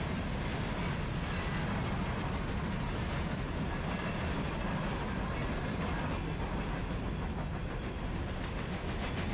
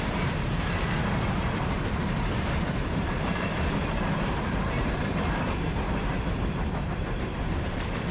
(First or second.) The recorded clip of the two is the first